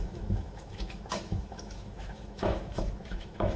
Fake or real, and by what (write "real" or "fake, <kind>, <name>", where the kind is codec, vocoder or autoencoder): fake, autoencoder, DAC-VAE